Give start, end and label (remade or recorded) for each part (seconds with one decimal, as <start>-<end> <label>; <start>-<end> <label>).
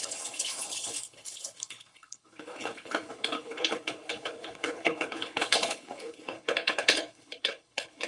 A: 0.0-8.1 remade